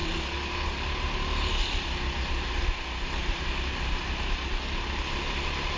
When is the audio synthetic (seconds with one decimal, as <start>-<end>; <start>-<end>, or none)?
none